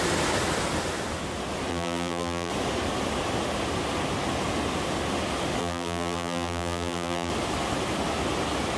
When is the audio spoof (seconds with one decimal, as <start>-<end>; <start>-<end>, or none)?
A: 1.7-2.5; 5.6-7.3